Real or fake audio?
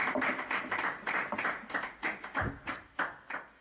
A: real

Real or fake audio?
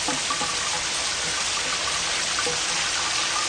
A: real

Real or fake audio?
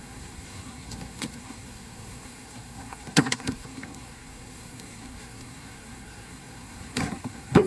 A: fake